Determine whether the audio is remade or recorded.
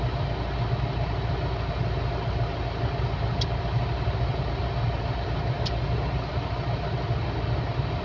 recorded